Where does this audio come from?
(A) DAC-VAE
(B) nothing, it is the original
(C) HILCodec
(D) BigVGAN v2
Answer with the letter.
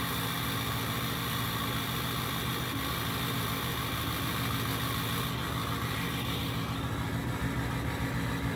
B